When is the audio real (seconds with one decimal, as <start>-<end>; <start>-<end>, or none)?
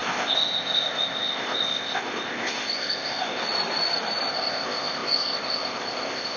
3.4-4.3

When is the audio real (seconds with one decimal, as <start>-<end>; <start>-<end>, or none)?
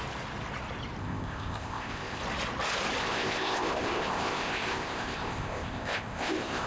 0.0-1.0; 2.2-3.0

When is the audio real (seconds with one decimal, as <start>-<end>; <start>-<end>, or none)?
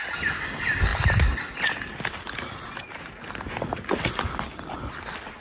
0.0-5.4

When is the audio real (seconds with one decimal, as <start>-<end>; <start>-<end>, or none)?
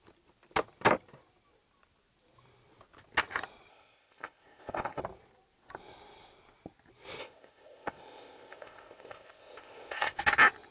0.0-3.7; 5.0-7.2; 10.2-10.7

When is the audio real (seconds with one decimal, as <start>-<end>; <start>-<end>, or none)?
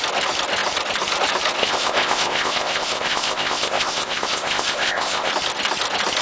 0.0-1.6; 5.3-6.2